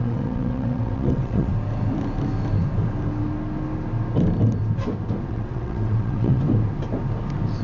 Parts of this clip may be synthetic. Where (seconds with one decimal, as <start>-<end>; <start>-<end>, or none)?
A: 0.0-1.5; 5.3-6.4

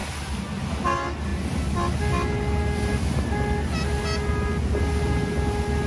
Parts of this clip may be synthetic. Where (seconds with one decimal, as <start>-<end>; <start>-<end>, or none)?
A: none

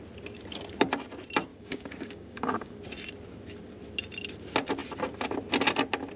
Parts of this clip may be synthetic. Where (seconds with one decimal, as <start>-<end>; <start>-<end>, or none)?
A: 1.5-2.7

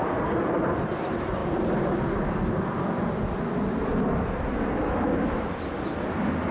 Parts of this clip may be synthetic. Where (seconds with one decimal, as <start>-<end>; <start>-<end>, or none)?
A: none

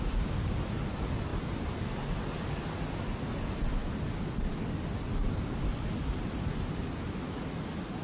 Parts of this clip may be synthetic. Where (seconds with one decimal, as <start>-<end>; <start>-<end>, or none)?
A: none

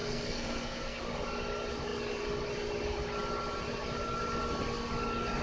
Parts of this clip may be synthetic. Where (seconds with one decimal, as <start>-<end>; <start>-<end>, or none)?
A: 0.0-1.0

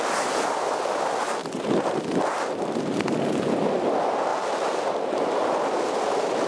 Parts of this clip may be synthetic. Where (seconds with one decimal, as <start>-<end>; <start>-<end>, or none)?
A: 1.4-2.8

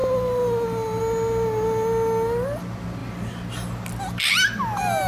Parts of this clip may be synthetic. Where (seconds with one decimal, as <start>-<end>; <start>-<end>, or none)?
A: none